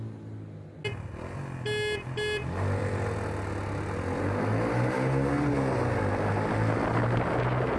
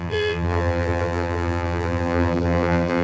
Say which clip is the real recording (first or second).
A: first